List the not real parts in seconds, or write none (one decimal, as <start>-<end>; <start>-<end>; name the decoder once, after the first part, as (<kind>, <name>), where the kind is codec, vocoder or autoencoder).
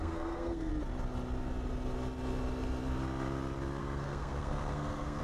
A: 0.0-0.7 (codec, SNAC); 3.8-5.2